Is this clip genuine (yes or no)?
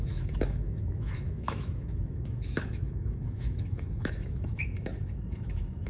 no